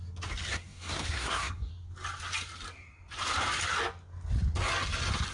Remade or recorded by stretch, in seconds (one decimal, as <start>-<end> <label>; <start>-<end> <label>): 0.0-0.5 recorded; 0.5-1.7 remade; 1.7-5.3 recorded